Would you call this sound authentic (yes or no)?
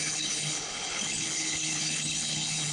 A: no